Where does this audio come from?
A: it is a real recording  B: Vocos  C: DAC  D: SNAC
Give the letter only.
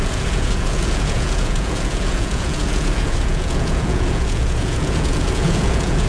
B